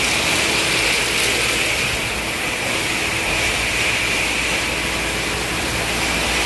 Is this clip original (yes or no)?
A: yes